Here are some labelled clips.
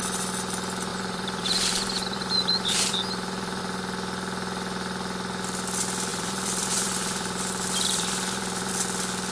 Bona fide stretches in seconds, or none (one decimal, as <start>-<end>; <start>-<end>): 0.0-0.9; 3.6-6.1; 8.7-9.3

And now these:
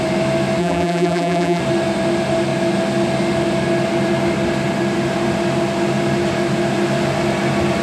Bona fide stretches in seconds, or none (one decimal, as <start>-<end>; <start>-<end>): 0.0-0.6; 1.6-7.8

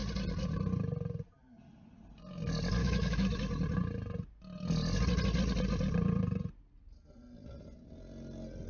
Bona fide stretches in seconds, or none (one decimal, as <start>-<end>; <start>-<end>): 0.0-2.8; 3.4-8.7

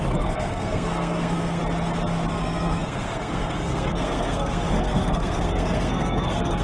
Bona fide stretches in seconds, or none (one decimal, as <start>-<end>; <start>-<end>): 1.6-2.3